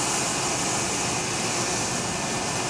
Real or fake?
real